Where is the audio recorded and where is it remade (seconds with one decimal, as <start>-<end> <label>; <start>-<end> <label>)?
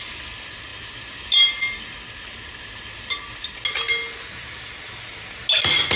0.0-6.0 recorded